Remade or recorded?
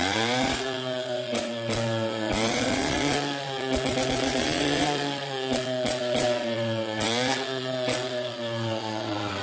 remade